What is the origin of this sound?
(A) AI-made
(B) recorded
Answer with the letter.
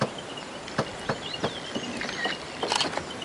B